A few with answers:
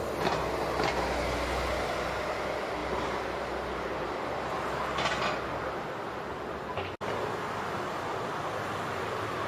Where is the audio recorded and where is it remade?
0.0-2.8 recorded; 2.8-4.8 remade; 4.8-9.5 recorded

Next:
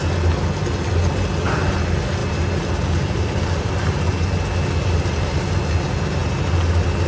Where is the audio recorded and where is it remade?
0.0-2.2 recorded; 2.2-4.1 remade; 4.1-7.1 recorded